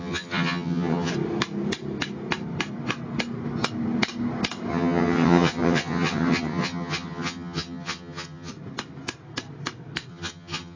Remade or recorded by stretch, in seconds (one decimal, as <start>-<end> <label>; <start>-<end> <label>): 0.0-1.1 remade; 1.1-4.7 recorded; 4.7-8.5 remade; 8.5-10.1 recorded; 10.1-10.8 remade